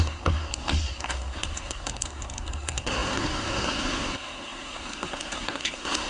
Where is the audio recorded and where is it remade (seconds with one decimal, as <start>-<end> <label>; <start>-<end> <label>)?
0.0-6.1 remade